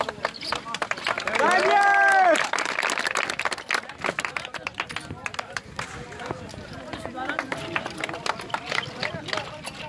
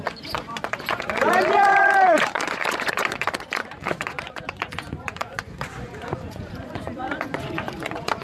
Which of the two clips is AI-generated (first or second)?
second